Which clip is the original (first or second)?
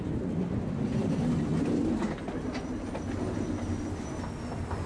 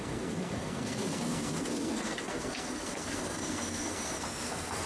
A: first